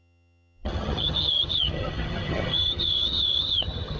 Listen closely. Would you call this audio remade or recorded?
remade